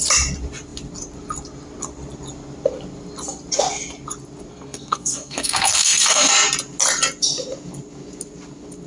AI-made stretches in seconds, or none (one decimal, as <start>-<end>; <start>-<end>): 4.5-6.3